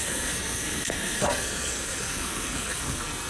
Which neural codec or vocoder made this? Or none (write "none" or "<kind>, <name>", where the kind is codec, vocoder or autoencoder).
codec, SNAC